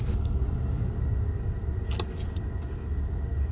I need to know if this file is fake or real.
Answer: real